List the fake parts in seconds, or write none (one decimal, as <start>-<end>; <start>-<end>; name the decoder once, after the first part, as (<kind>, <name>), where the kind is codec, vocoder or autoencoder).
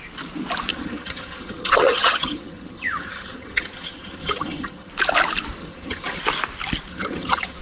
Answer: 0.7-4.9 (vocoder, HiFi-GAN); 5.6-6.2; 6.9-7.6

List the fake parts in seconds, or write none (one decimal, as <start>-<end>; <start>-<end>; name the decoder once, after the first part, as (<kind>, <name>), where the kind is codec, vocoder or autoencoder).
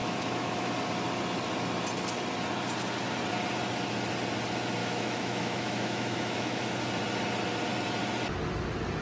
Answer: 0.0-0.7 (autoencoder, DAC-VAE); 4.8-6.8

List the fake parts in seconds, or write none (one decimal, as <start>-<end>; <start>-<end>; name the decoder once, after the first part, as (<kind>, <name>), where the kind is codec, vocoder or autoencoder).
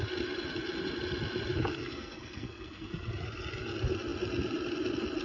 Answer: 1.7-2.9 (codec, SNAC)